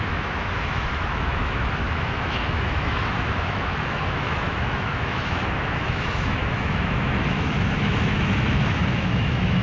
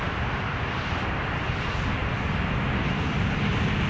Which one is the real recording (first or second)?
second